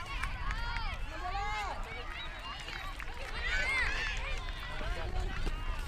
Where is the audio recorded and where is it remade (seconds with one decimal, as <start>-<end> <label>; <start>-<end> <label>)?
0.0-5.9 recorded